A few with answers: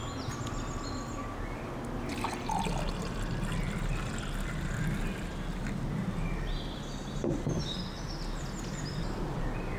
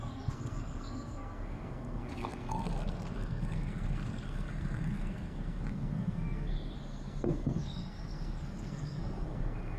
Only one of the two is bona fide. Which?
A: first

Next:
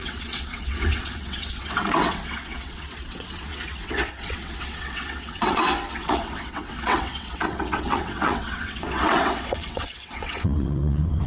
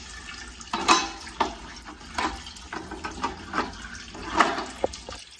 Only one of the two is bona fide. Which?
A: second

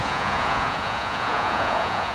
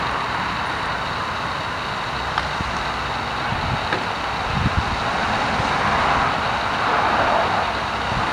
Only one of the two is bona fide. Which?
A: second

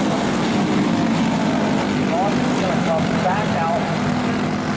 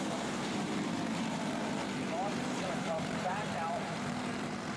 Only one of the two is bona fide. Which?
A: first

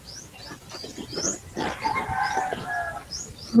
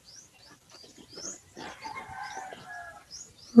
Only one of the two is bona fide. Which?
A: first